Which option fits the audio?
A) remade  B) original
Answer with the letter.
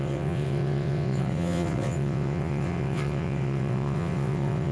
A